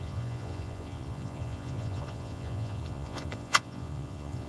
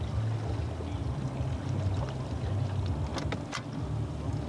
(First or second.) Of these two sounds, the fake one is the first